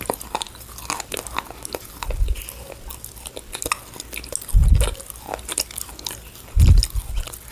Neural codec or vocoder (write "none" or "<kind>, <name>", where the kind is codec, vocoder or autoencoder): none